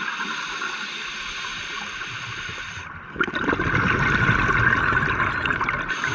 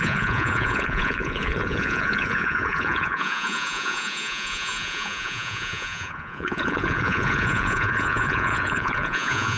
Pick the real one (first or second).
first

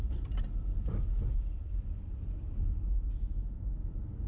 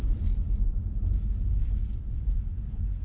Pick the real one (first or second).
first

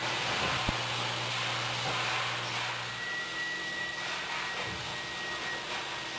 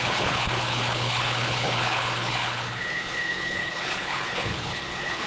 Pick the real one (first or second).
first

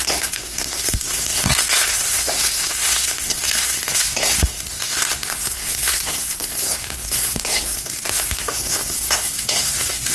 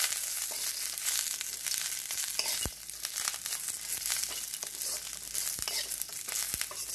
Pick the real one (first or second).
second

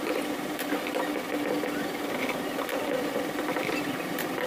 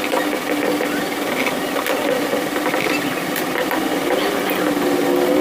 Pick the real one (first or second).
second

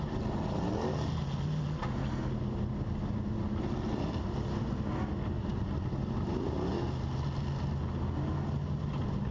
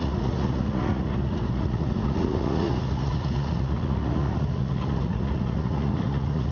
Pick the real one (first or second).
first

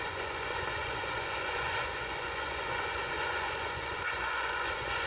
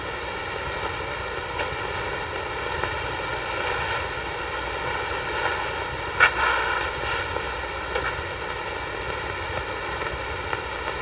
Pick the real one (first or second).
second